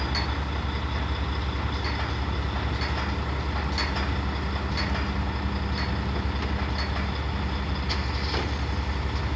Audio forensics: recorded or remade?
recorded